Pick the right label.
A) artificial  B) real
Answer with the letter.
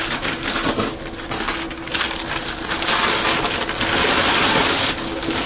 B